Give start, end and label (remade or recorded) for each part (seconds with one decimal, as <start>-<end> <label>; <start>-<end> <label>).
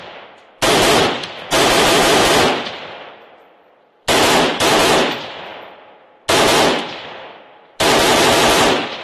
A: 0.0-5.5 remade; 5.5-6.3 recorded; 6.3-9.0 remade